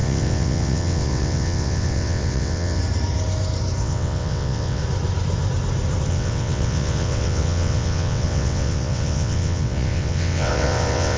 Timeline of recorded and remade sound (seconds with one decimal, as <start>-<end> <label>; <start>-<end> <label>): 0.0-2.8 remade; 2.8-3.8 recorded; 3.8-4.8 remade; 4.8-6.1 recorded; 6.1-11.2 remade